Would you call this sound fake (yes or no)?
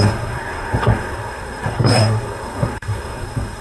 yes